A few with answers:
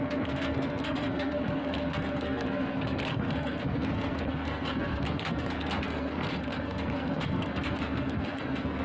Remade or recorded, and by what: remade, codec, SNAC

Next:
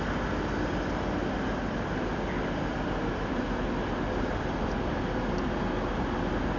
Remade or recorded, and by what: recorded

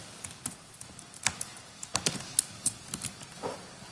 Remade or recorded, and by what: recorded